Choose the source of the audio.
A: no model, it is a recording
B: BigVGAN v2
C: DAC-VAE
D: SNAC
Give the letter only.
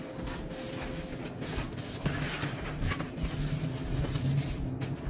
A